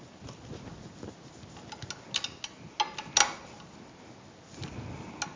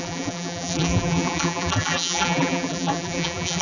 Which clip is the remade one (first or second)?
second